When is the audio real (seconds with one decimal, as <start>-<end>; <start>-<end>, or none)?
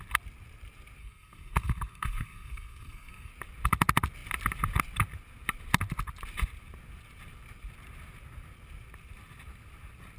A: 0.0-1.0; 3.3-10.2